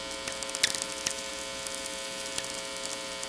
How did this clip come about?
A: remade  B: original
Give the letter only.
B